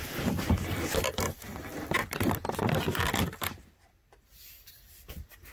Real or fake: real